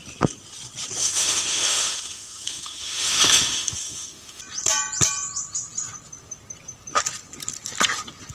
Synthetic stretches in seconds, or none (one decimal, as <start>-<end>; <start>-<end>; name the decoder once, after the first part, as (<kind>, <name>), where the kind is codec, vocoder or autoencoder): 1.0-4.4 (autoencoder, DAC-VAE)